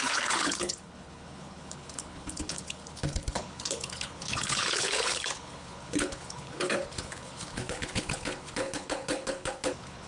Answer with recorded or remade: remade